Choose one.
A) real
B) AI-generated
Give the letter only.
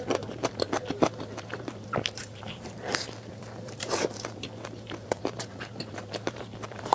B